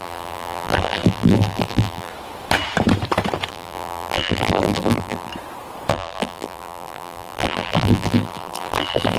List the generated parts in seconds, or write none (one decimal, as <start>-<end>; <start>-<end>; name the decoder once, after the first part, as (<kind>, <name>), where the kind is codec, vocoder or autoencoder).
0.0-2.1 (vocoder, BigVGAN v2); 3.5-5.3; 5.9-9.2